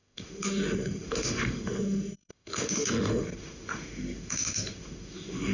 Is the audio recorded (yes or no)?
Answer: no